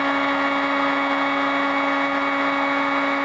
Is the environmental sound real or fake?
real